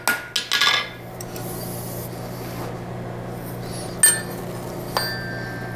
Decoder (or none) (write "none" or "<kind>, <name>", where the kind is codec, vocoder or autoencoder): none